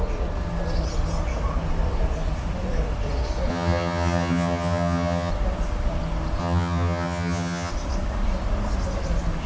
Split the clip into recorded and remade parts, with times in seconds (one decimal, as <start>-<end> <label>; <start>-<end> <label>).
0.0-3.5 recorded; 3.5-5.3 remade; 5.3-6.4 recorded; 6.4-7.7 remade; 7.7-9.5 recorded